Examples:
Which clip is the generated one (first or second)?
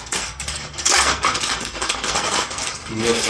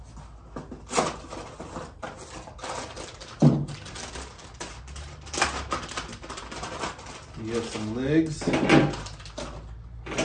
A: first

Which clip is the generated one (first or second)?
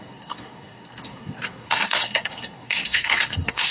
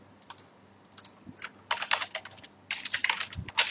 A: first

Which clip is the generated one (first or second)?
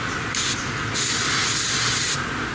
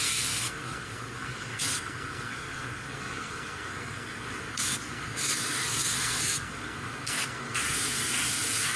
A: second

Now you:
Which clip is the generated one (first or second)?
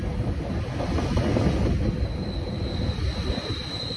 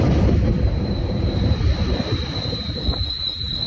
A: second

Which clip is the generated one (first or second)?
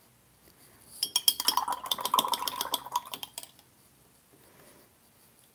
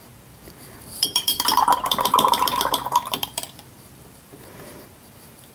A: second